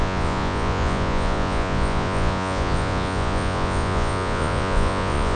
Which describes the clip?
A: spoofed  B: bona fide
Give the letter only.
A